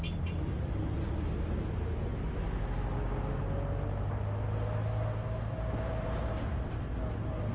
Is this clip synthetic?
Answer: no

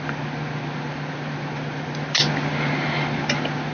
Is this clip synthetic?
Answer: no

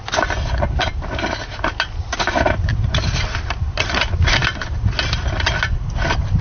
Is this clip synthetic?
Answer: no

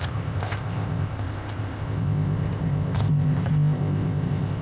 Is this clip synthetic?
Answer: yes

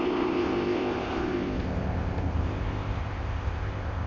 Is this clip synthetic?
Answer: yes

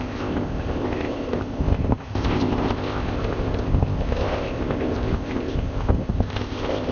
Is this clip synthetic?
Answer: yes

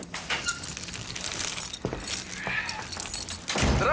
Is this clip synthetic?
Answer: no